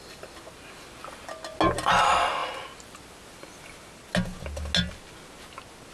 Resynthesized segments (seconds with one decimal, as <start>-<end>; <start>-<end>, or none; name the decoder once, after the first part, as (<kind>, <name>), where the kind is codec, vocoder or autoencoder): none